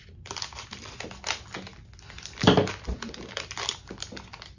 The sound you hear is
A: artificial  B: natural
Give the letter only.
B